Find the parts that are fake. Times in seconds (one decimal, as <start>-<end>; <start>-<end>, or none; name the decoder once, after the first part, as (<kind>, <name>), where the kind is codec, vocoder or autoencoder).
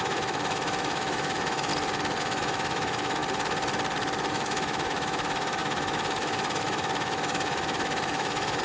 0.0-1.7 (autoencoder, DAC-VAE); 2.2-3.2; 4.3-8.6